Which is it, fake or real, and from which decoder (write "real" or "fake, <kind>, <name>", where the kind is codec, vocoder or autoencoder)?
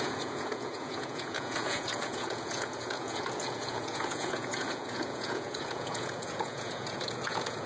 fake, vocoder, Vocos